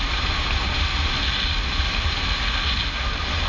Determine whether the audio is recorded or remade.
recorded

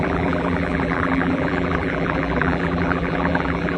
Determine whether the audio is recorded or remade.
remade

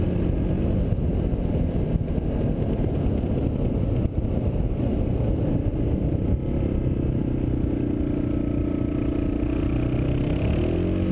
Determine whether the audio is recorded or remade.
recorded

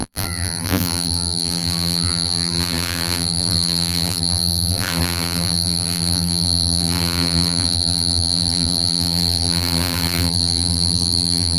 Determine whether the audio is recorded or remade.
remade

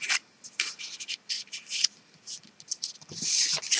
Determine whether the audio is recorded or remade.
recorded